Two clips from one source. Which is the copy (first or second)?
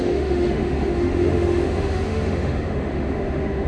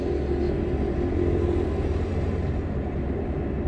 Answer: first